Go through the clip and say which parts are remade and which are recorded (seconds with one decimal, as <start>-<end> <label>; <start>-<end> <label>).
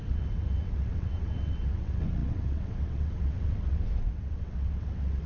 0.0-5.3 remade